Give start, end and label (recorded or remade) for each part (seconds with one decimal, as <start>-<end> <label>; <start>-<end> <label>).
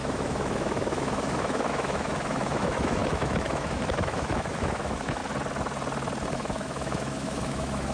0.0-5.2 remade; 5.2-6.3 recorded; 6.3-7.9 remade